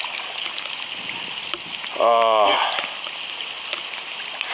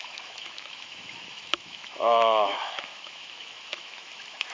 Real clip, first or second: first